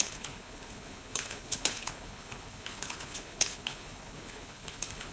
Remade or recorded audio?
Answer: remade